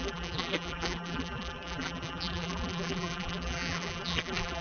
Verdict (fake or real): fake